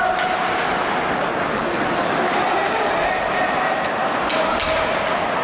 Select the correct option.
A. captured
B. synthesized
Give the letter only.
A